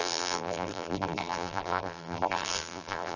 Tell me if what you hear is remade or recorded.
remade